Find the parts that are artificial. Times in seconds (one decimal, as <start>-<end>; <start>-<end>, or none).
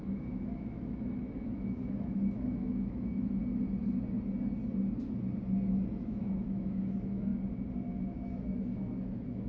0.0-3.4; 6.0-7.3; 7.9-9.5